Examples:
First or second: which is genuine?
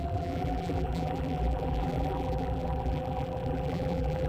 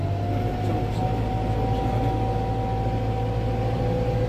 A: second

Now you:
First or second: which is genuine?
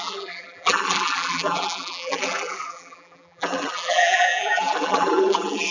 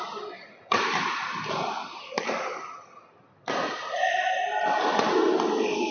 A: second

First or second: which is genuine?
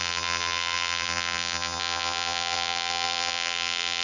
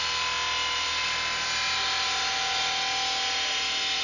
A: second